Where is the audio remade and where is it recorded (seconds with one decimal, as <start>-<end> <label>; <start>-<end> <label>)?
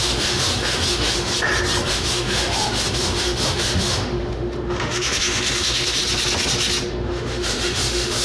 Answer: 0.0-1.3 remade; 1.3-1.9 recorded; 1.9-6.0 remade; 6.0-6.9 recorded; 6.9-8.2 remade